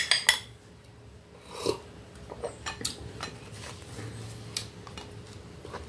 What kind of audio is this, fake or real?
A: real